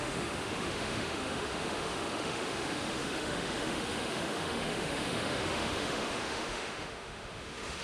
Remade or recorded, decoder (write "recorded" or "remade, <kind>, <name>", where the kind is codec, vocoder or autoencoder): remade, autoencoder, DAC-VAE